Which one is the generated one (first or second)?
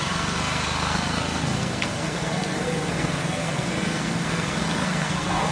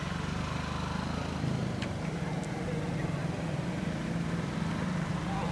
first